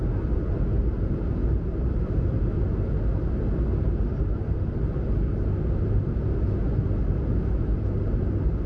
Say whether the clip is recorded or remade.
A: recorded